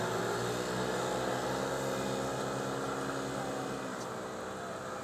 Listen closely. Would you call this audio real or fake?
real